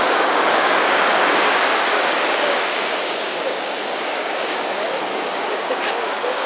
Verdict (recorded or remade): remade